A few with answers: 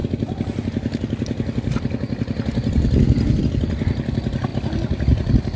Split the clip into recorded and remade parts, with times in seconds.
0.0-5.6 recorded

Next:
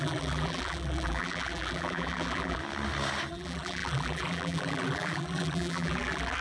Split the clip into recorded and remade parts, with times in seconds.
0.0-2.6 remade; 2.6-3.3 recorded; 3.3-6.4 remade

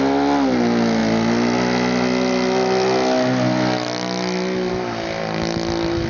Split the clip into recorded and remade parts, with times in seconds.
0.0-6.1 recorded

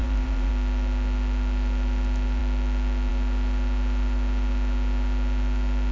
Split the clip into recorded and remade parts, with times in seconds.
0.0-0.5 remade; 0.5-5.9 recorded

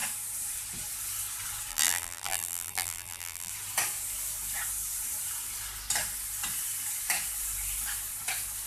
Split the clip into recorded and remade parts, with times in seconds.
0.0-1.7 recorded; 1.7-3.5 remade; 3.5-8.7 recorded

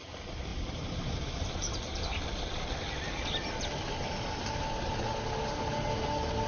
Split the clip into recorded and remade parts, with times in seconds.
0.0-0.5 recorded; 0.5-2.6 remade; 2.6-6.5 recorded